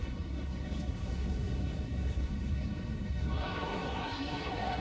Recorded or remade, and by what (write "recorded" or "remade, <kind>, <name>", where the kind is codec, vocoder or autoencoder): remade, codec, SNAC